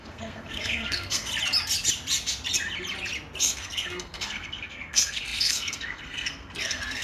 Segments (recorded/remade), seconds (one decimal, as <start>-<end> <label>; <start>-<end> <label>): 0.0-1.3 remade; 1.3-3.4 recorded; 3.4-7.0 remade